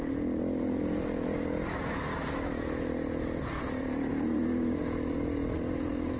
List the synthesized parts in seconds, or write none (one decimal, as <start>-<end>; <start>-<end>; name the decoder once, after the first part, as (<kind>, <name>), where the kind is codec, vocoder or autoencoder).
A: 2.1-2.9 (autoencoder, DAC-VAE)